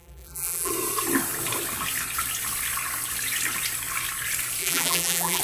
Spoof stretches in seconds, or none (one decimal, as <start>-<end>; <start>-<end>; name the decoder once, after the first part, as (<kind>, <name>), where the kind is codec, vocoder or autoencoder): 0.0-0.7 (vocoder, BigVGAN v2); 4.6-5.4